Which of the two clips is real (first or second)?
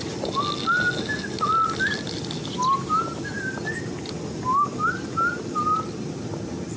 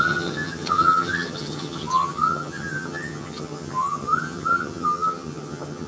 first